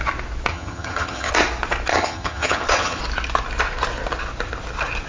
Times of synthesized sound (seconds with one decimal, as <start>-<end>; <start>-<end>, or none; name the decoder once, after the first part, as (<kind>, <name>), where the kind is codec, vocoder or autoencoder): 0.5-1.3 (vocoder, HiFi-GAN); 1.9-3.0